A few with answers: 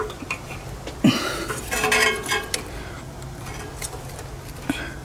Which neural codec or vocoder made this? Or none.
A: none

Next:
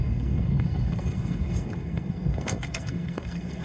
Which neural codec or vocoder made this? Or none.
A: codec, SNAC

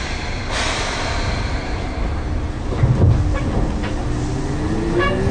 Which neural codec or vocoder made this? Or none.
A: none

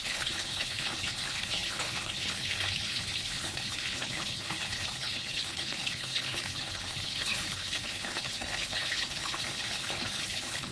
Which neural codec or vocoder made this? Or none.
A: codec, HILCodec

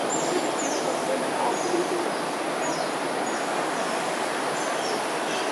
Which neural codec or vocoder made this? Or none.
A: none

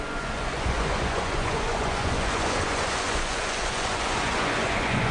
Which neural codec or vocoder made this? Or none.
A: vocoder, Vocos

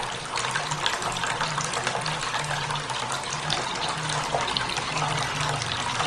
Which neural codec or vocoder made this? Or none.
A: none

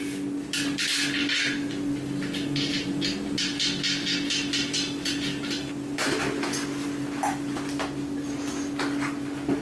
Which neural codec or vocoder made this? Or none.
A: none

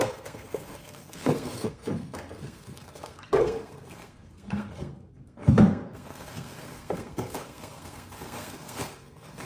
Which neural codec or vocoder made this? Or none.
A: codec, SNAC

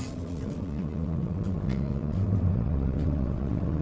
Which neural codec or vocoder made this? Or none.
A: vocoder, WaveNeXt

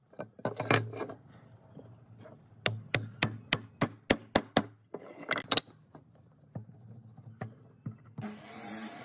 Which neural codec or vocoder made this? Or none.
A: none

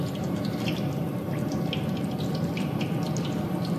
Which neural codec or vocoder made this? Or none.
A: none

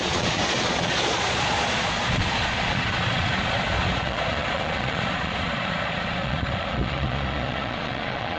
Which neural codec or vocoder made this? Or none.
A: vocoder, Vocos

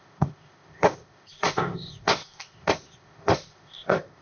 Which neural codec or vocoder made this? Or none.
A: codec, ZipCodec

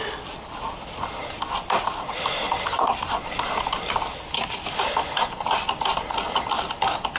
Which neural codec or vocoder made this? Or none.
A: none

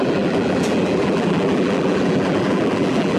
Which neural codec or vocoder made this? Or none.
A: vocoder, BigVGAN v2